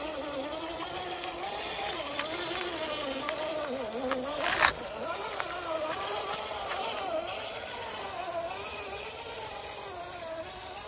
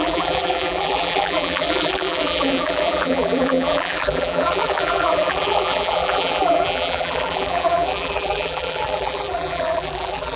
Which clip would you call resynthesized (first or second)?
second